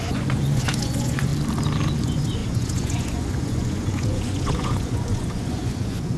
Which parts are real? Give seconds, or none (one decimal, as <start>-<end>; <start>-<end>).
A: 1.3-1.9